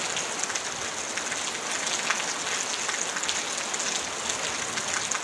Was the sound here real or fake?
real